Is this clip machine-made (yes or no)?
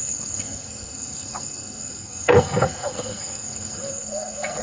yes